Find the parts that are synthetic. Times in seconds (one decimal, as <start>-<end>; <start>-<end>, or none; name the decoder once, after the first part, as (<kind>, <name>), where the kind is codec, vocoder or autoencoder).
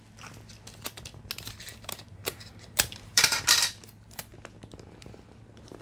1.7-3.5 (vocoder, BigVGAN v2)